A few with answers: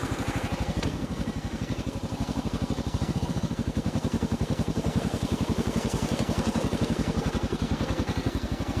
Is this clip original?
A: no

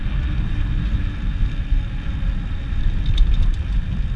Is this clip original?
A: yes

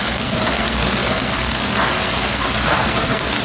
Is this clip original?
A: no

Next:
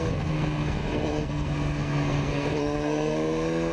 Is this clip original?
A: no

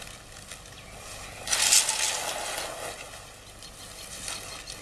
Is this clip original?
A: yes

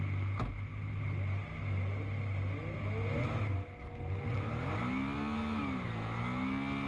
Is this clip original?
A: yes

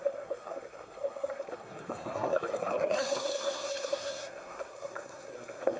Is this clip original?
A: no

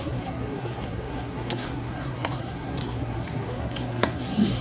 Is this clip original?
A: no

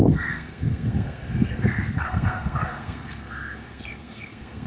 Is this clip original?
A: no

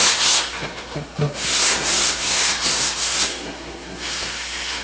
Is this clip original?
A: no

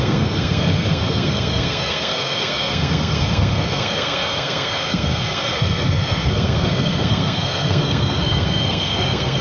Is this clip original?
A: no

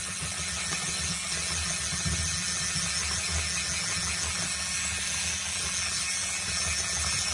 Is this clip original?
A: yes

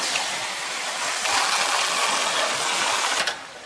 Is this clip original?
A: yes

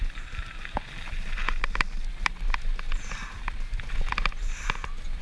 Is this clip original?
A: yes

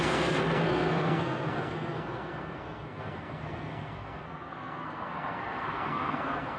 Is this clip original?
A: no